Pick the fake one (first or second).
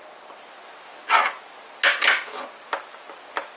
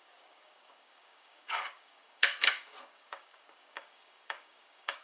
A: second